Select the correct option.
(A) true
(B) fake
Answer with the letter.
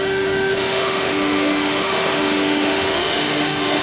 B